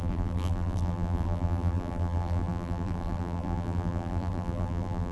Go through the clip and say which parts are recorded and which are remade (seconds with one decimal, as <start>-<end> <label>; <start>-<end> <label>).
0.0-5.1 remade